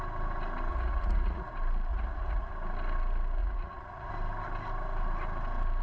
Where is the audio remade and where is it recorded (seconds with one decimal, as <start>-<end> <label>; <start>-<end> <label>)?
0.0-0.7 recorded; 0.7-1.5 remade; 1.5-1.9 recorded; 1.9-2.5 remade; 2.5-3.4 recorded; 3.4-4.1 remade; 4.1-5.8 recorded